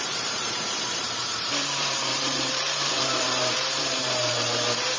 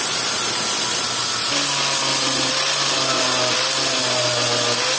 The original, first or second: second